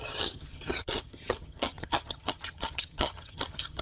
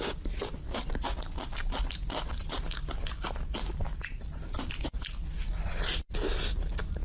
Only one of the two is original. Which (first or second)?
second